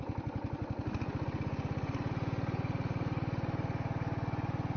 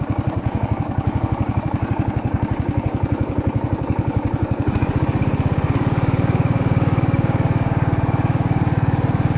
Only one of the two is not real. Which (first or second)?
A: second